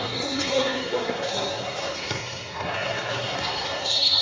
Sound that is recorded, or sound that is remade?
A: remade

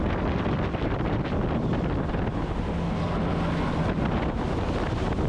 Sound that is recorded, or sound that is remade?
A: recorded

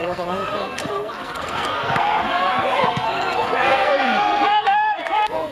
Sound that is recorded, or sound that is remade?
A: remade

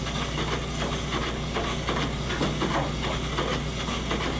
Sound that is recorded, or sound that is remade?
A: recorded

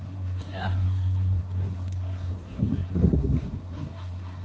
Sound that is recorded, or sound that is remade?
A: remade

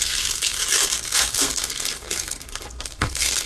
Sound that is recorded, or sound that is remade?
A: remade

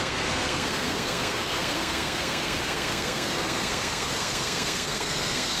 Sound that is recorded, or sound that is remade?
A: remade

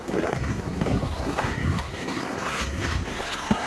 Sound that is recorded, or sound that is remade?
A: remade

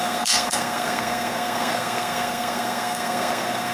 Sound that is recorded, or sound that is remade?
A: remade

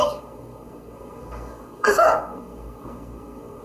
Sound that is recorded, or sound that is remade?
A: remade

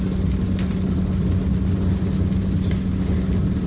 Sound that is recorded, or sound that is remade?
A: recorded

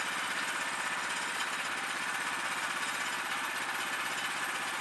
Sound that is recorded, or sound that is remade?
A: recorded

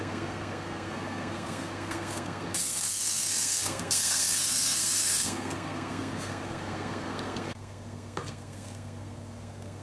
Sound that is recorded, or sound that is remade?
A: remade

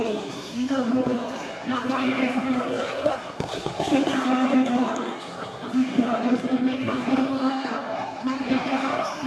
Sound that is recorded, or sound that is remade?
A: remade